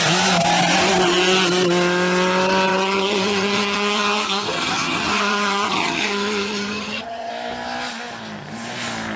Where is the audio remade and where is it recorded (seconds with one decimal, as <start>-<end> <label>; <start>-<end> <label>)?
0.0-2.7 recorded; 2.7-7.3 remade; 7.3-9.2 recorded